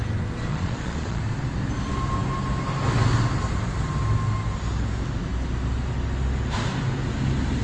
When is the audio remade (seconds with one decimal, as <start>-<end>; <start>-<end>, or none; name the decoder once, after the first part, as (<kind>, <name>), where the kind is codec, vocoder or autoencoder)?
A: 0.5-1.2 (vocoder, Vocos)